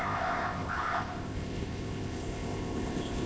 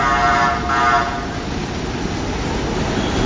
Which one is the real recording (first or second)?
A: second